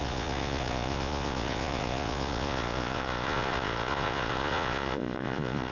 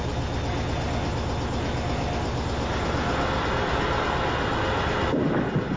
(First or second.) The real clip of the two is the second